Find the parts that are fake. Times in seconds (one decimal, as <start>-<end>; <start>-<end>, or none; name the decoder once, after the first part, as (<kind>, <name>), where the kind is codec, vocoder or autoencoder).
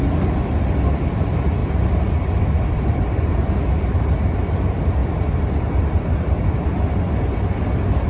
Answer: 1.6-3.5 (vocoder, BigVGAN v2); 5.0-6.6